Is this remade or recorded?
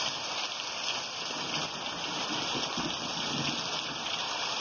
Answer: recorded